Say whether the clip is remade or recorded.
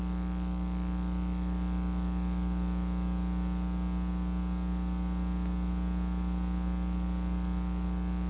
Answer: recorded